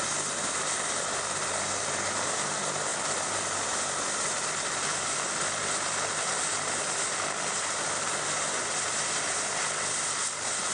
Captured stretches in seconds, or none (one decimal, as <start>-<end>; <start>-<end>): 0.0-10.7